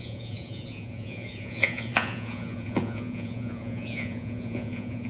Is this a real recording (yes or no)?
no